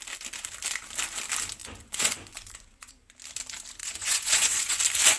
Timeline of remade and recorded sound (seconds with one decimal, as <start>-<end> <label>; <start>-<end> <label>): 0.0-1.6 recorded; 1.6-2.9 remade; 2.9-3.8 recorded; 3.8-4.8 remade; 4.8-5.2 recorded